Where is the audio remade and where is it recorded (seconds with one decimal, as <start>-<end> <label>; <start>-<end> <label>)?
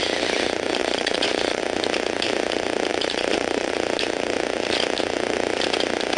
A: 0.0-0.8 recorded; 0.8-1.6 remade; 1.6-2.9 recorded; 2.9-3.7 remade; 3.7-6.2 recorded